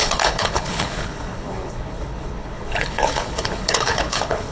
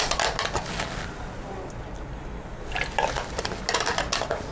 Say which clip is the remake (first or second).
first